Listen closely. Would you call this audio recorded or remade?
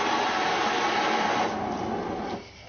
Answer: recorded